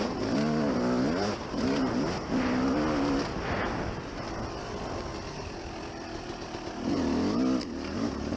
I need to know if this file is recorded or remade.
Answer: recorded